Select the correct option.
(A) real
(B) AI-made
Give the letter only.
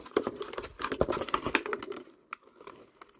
A